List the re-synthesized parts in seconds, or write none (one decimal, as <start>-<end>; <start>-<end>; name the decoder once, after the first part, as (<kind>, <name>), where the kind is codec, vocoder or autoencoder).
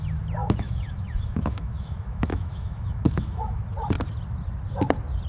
0.4-3.6 (autoencoder, DAC-VAE)